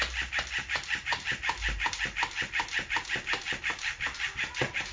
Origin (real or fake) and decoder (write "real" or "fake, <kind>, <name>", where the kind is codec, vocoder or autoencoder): real